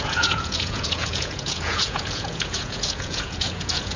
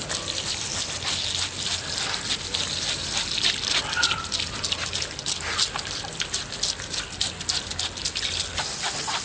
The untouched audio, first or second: second